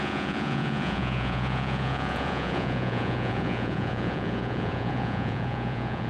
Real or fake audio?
fake